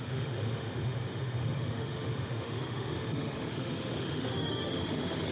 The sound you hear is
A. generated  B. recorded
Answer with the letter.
A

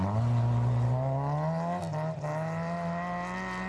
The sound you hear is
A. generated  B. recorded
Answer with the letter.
B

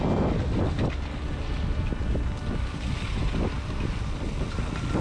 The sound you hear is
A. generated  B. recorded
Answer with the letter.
B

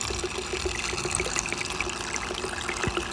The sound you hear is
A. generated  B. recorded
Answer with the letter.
B